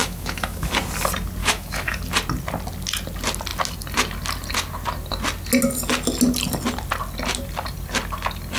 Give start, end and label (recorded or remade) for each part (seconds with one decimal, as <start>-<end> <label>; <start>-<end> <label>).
0.0-0.7 remade; 0.7-1.4 recorded; 1.4-2.0 remade; 2.0-8.6 recorded